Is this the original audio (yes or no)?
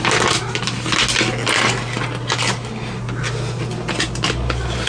yes